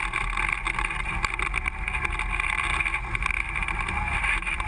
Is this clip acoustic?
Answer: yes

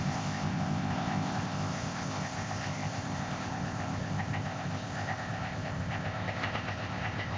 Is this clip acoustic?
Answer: no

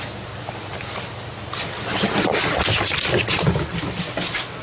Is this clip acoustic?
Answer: yes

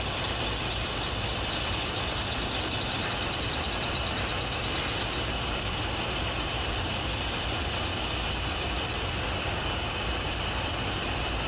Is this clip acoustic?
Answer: yes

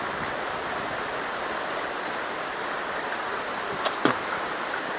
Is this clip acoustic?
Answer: no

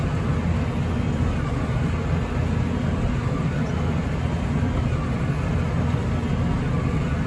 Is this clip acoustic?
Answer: yes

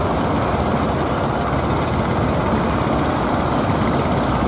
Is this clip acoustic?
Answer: yes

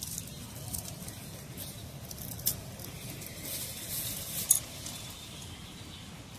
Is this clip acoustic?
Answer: yes